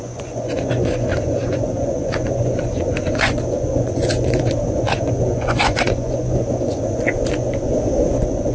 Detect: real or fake fake